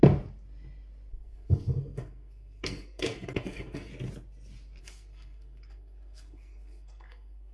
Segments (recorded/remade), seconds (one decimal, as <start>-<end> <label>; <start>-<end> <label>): 0.0-1.1 recorded; 1.1-3.9 remade; 3.9-4.8 recorded; 4.8-7.5 remade